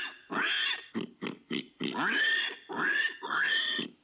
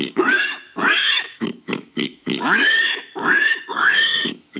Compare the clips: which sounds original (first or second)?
first